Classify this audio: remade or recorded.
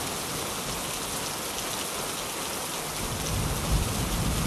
recorded